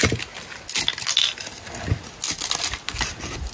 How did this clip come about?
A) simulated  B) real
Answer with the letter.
B